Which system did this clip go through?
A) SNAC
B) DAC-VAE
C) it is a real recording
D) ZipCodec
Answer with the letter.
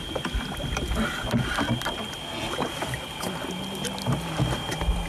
C